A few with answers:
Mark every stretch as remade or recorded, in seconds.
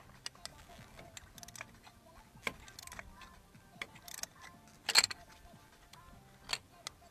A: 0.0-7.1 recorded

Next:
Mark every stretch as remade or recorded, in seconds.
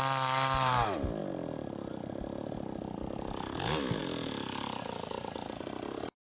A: 0.0-6.2 recorded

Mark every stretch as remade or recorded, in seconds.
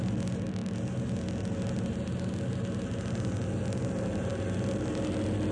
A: 0.0-5.5 recorded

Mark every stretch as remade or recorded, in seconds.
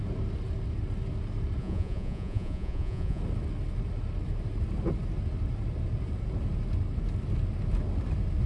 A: 0.0-1.6 recorded; 1.6-3.2 remade; 3.2-8.5 recorded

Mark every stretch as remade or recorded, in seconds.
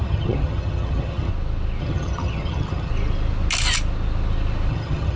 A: 0.0-1.3 remade; 1.3-1.8 recorded; 1.8-2.9 remade; 2.9-4.7 recorded; 4.7-5.2 remade